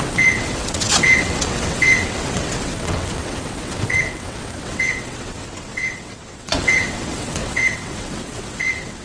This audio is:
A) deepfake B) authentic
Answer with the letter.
A